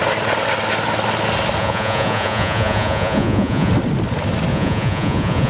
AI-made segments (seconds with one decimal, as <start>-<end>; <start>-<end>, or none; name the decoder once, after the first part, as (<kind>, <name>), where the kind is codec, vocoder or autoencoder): 1.6-3.7 (vocoder, Vocos); 4.5-5.5